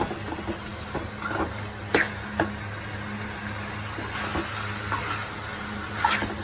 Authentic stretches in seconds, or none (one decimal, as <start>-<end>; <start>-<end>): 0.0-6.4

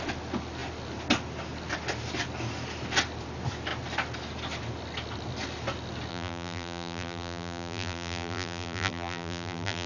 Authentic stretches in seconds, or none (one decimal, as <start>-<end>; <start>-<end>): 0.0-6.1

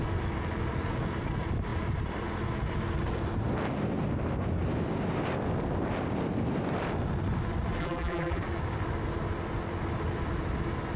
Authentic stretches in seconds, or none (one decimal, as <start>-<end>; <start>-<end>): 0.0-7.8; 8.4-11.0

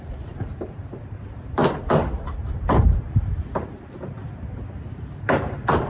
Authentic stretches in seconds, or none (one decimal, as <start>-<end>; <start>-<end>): 1.6-2.8; 4.2-5.2

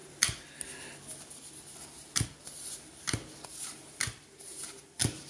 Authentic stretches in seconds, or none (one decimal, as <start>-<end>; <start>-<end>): 0.0-5.3